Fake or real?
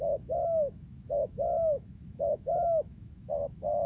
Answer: fake